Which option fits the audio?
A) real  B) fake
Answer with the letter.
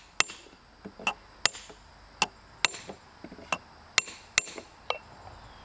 A